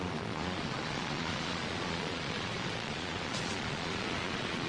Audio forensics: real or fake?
fake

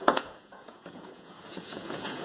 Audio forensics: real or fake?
fake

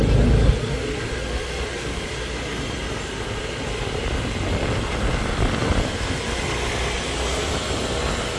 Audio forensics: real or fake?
real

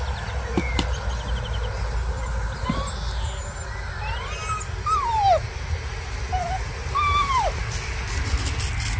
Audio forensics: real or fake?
real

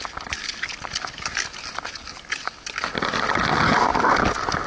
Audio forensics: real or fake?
real